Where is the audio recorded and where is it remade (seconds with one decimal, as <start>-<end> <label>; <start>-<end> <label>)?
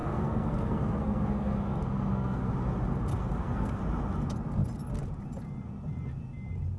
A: 0.0-2.5 remade; 2.5-3.1 recorded; 3.1-3.8 remade; 3.8-6.8 recorded